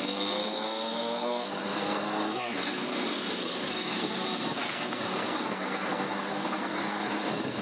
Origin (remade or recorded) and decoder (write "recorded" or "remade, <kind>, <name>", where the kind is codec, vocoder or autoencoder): remade, codec, SNAC